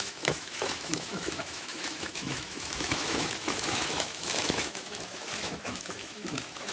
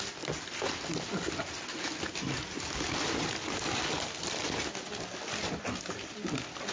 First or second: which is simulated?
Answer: first